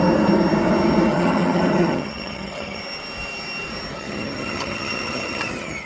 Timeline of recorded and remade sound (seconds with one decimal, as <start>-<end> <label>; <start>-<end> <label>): 0.0-1.1 recorded; 1.1-2.8 remade; 2.8-3.9 recorded; 3.9-5.9 remade